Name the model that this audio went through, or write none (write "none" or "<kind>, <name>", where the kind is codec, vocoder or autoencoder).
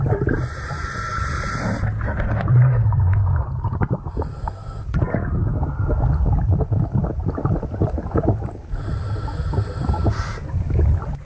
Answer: none